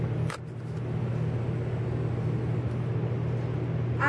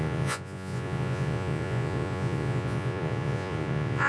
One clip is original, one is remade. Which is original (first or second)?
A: first